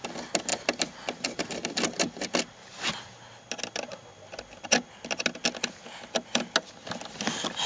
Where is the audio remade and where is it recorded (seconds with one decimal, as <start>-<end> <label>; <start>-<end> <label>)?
0.0-7.7 recorded